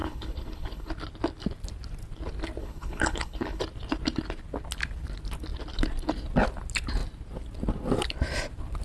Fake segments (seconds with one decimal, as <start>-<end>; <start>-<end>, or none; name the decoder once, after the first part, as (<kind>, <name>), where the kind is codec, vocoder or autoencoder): 0.0-0.9 (codec, HILCodec); 2.6-3.6